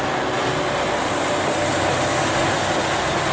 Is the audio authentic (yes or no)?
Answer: yes